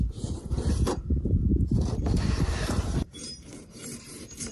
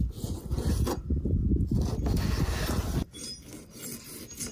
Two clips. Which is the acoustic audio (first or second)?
second